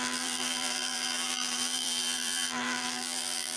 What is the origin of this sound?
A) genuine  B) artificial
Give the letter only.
B